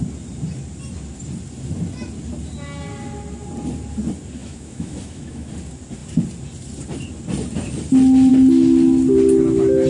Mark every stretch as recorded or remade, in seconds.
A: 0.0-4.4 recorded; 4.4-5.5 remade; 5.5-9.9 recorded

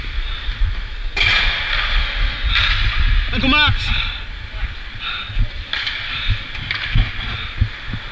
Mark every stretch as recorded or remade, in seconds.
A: 0.0-2.0 recorded; 2.0-2.5 remade; 2.5-8.1 recorded

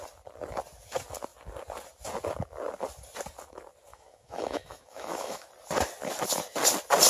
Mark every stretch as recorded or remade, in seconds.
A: 0.0-3.9 recorded; 3.9-5.5 remade; 5.5-7.1 recorded